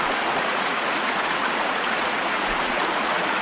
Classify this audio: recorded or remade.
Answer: remade